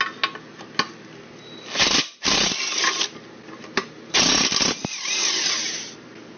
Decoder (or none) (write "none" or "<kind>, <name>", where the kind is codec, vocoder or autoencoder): none